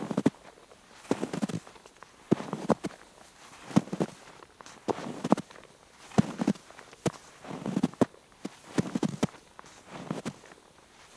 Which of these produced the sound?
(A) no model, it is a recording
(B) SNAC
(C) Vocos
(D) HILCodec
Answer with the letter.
A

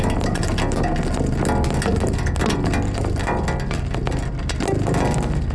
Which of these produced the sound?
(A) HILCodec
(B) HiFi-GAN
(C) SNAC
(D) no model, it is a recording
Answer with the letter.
D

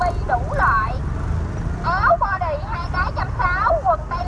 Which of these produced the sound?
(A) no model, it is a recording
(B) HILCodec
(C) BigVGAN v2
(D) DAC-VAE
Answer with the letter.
A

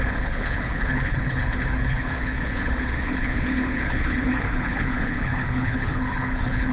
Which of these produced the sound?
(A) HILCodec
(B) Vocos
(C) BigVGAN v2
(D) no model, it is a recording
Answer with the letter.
A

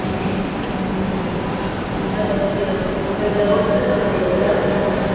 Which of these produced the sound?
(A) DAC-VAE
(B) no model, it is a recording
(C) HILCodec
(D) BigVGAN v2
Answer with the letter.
B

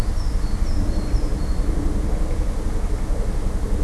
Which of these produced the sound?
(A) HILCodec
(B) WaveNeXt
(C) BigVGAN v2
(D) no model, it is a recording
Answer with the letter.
D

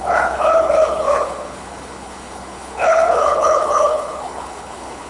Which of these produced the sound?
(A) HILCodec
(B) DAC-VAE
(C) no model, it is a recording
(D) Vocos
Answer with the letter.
A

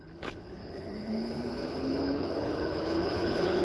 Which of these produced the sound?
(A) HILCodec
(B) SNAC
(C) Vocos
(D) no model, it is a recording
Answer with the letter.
A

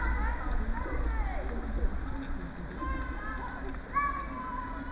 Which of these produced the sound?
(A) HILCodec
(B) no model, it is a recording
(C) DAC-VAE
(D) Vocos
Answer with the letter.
B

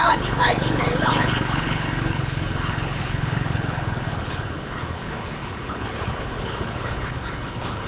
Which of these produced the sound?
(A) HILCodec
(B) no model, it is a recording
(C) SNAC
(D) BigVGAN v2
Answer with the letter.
A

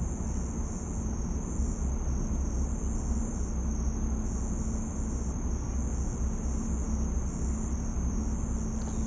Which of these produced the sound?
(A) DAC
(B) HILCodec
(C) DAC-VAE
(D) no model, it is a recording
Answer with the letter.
D